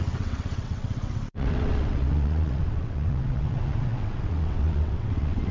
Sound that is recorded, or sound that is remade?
remade